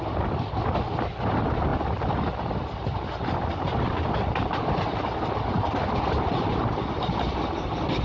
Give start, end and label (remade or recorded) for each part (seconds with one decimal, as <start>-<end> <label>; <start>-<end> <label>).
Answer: 0.0-8.0 recorded